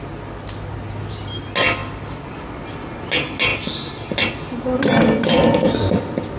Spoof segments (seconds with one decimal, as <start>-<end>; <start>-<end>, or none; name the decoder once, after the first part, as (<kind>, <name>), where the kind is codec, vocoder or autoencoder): none